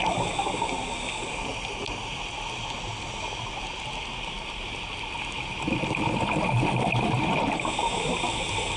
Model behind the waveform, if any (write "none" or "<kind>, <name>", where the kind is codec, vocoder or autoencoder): none